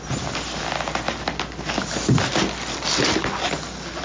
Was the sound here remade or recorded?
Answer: recorded